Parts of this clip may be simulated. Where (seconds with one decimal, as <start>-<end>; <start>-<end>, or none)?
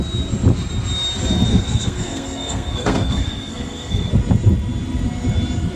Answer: 1.5-4.1